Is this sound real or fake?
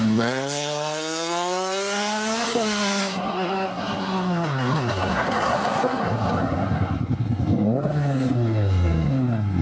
fake